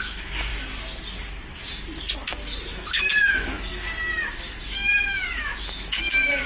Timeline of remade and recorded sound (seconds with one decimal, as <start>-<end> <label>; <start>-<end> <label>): 0.0-0.5 remade; 0.5-2.7 recorded; 2.7-3.7 remade; 3.7-4.6 recorded; 4.6-6.5 remade